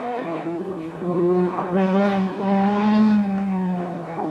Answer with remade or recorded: remade